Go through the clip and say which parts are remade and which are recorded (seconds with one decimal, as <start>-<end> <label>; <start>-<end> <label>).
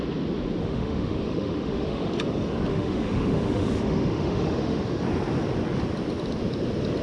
0.0-0.6 recorded; 0.6-2.1 remade; 2.1-2.7 recorded; 2.7-4.8 remade; 4.8-7.0 recorded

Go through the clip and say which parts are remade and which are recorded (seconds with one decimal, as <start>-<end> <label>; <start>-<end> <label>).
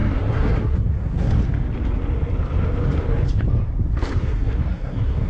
0.0-1.3 remade; 1.3-4.2 recorded; 4.2-5.3 remade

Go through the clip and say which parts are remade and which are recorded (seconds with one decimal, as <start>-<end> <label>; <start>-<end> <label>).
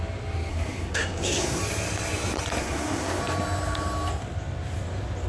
0.0-0.5 recorded; 0.5-1.6 remade; 1.6-2.6 recorded; 2.6-3.2 remade; 3.2-5.3 recorded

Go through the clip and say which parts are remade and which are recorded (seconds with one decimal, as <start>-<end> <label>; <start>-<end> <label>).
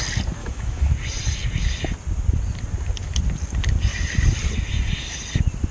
0.0-0.4 recorded; 0.4-0.9 remade; 0.9-5.7 recorded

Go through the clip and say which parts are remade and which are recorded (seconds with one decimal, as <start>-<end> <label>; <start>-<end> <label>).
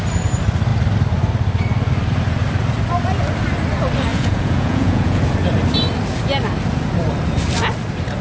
0.0-4.1 recorded; 4.1-5.2 remade; 5.2-8.2 recorded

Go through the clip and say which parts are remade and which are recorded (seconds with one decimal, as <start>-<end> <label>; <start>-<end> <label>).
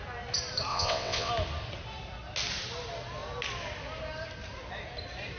0.0-0.7 recorded; 0.7-1.3 remade; 1.3-5.4 recorded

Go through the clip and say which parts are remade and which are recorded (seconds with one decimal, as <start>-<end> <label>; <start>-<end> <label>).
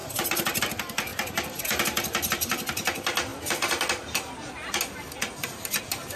0.0-0.6 remade; 0.6-1.1 recorded; 1.1-1.8 remade; 1.8-6.2 recorded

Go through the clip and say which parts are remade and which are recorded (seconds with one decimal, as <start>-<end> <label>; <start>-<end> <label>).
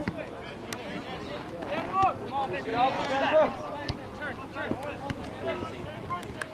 0.0-6.5 recorded